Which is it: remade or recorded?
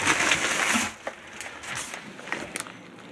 recorded